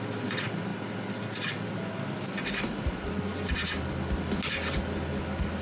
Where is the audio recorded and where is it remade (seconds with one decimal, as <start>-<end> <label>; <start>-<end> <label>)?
0.0-5.6 recorded